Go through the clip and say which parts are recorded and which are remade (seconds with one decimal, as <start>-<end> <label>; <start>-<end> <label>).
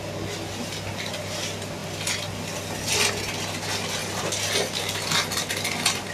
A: 0.0-6.1 recorded